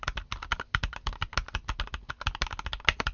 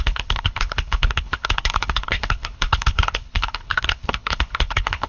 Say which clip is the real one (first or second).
first